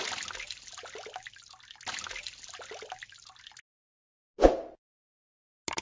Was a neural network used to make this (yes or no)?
no